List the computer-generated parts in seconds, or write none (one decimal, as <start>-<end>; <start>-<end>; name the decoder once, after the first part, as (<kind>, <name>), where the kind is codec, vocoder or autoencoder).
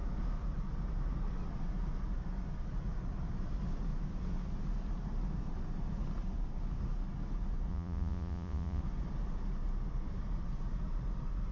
7.7-8.8 (vocoder, Vocos)